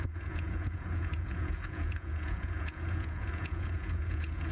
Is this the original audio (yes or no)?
no